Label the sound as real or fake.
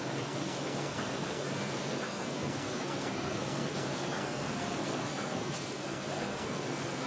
fake